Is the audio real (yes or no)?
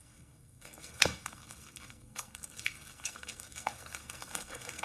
no